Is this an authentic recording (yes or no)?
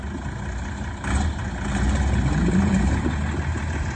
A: yes